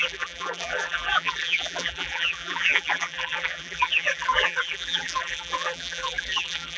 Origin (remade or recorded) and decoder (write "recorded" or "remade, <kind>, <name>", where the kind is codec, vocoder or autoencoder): remade, vocoder, BigVGAN v2